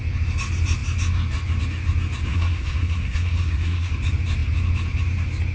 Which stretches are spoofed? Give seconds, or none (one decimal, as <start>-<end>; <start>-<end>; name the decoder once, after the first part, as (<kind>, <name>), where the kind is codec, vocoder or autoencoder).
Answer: 2.3-3.9 (codec, SNAC)